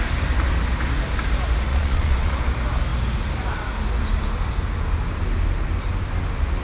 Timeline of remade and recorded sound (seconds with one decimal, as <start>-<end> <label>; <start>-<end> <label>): 0.0-1.7 recorded; 1.7-2.4 remade; 2.4-6.6 recorded